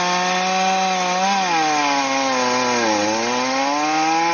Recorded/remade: recorded